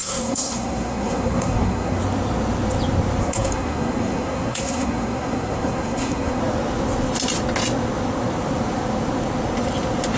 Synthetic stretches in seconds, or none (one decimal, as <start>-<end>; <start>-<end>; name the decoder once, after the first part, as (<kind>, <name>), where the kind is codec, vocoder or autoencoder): 0.0-2.0 (codec, SNAC); 3.2-6.4